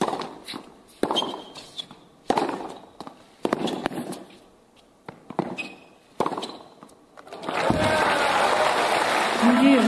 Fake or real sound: real